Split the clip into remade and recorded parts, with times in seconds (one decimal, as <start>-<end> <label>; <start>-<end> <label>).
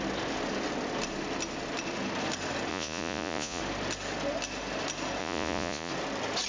0.0-2.7 recorded; 2.7-3.6 remade; 3.6-5.2 recorded; 5.2-5.9 remade; 5.9-6.5 recorded